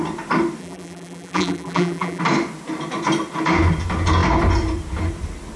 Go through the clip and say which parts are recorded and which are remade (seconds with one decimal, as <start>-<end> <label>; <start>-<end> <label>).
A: 0.0-0.6 recorded; 0.6-2.2 remade; 2.2-5.6 recorded